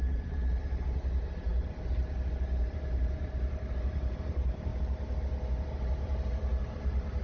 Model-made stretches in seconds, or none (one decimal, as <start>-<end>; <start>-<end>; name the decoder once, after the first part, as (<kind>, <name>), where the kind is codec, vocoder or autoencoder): 0.0-4.7 (vocoder, BigVGAN v2); 5.8-7.2